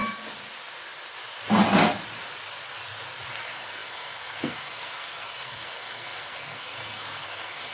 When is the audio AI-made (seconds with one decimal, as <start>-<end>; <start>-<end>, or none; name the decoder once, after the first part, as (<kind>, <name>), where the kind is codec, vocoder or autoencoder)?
3.3-7.7 (codec, SNAC)